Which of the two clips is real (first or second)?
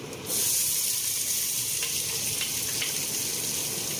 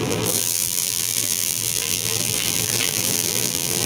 first